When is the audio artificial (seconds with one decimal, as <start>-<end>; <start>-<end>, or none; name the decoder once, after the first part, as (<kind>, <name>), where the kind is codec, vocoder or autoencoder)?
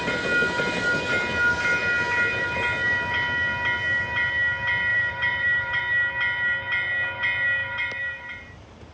4.9-5.8 (vocoder, BigVGAN v2); 7.6-8.9